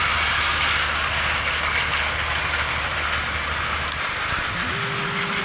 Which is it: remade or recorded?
recorded